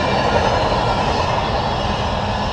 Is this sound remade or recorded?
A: recorded